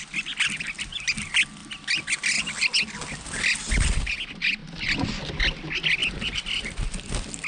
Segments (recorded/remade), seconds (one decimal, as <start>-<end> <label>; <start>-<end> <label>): 0.0-7.5 recorded